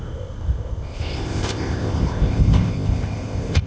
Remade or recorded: remade